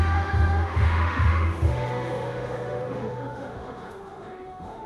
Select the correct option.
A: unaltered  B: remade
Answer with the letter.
B